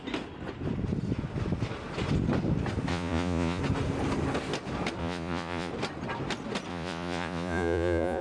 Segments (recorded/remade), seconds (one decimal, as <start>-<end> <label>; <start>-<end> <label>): 0.0-2.9 recorded; 2.9-3.6 remade; 3.6-5.0 recorded; 5.0-5.7 remade; 5.7-6.7 recorded; 6.7-8.2 remade